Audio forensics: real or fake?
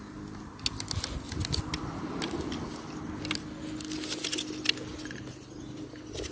real